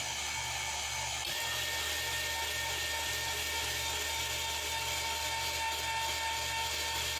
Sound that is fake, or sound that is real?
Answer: real